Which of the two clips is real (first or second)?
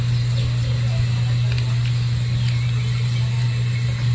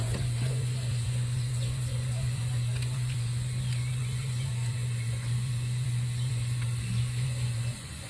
first